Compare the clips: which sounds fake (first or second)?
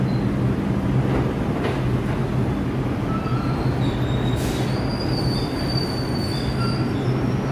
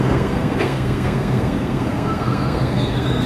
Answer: second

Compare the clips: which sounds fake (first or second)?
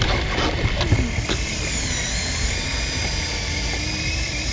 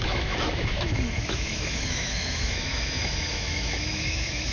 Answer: second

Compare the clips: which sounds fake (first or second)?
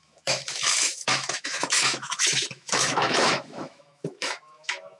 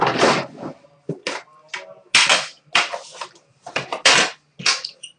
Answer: first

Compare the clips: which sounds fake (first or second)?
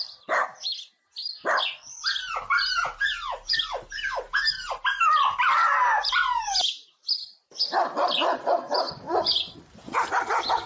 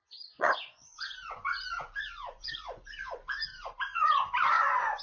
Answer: second